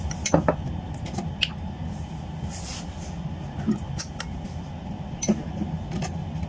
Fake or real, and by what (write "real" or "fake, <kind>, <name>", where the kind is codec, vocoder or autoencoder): real